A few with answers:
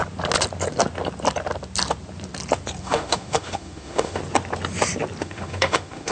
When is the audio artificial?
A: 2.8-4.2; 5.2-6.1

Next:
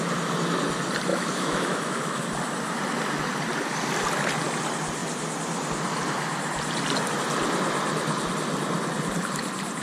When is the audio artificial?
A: 1.1-2.2

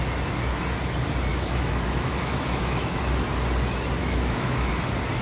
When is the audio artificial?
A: 1.3-3.0; 4.0-4.7

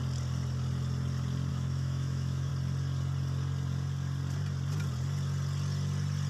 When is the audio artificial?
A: 1.5-2.5

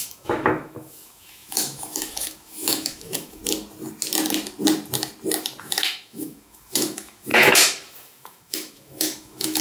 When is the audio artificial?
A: 0.0-3.4; 5.6-9.6

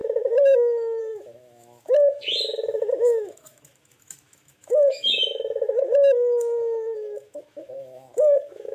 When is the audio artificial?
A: 0.0-8.7